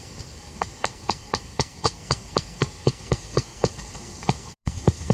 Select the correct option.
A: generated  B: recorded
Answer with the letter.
A